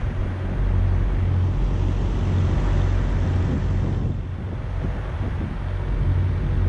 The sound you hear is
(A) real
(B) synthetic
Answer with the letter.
A